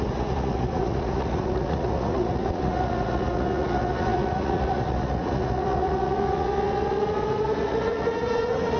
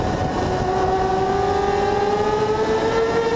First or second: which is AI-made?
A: first